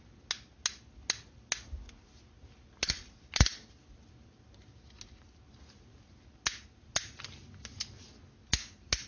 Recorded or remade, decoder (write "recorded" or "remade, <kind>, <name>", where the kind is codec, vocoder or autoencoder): recorded